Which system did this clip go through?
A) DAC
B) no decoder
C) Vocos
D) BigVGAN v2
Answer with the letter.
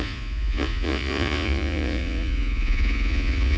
C